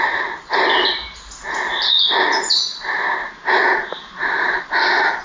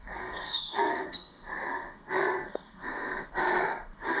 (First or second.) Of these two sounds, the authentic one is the first